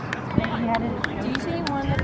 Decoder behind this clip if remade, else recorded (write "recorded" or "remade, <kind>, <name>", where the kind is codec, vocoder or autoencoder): recorded